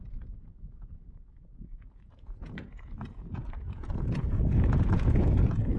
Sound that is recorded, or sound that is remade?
remade